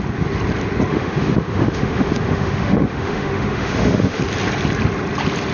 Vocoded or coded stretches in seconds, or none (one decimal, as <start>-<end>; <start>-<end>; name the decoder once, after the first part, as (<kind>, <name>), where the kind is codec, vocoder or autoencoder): 0.9-4.2 (autoencoder, DAC-VAE)